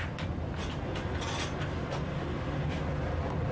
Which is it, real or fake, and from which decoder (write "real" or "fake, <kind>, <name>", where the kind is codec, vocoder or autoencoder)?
real